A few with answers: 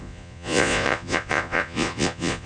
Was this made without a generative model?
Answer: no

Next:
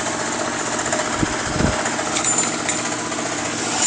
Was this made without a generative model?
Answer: yes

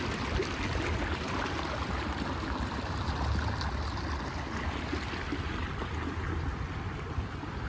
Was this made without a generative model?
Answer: yes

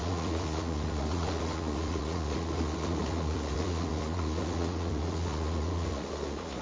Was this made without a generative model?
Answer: no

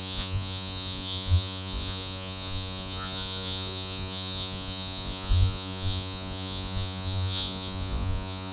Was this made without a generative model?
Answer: no